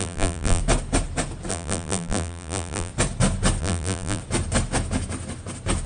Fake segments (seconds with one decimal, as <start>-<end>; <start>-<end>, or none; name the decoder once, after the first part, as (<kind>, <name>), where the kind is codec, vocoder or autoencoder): 0.0-0.6 (vocoder, BigVGAN v2); 1.5-2.9; 3.6-4.2